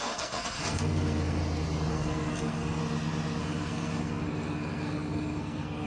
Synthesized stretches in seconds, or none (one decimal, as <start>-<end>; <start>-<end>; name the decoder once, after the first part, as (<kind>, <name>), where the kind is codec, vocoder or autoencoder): 0.0-1.4 (codec, SNAC); 1.9-2.8; 3.4-5.9